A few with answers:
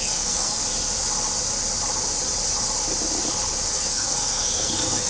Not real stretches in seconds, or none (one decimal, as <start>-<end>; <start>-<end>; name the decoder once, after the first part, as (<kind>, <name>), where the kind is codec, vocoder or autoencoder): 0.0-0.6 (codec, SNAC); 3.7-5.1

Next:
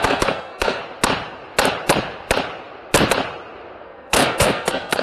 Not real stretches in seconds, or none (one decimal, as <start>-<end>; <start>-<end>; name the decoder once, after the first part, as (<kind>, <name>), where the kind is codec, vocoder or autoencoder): 0.0-0.8 (codec, SNAC); 3.8-5.0

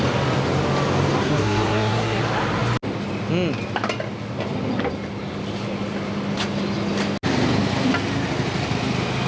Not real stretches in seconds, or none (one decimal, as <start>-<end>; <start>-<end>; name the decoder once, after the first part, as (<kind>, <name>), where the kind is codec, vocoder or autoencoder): 1.2-2.2 (codec, SNAC)